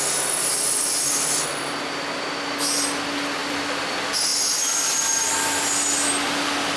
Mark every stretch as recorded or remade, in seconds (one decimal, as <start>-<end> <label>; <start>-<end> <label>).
0.0-6.8 recorded